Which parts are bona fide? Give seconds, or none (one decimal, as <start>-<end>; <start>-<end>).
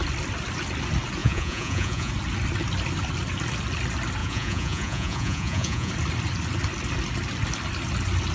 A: 0.0-1.2; 2.1-4.2; 5.9-8.3